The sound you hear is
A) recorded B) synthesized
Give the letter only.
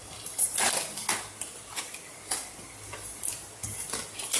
A